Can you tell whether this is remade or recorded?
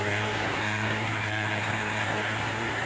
remade